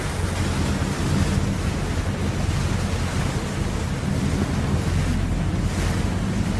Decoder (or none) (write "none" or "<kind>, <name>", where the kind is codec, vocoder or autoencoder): none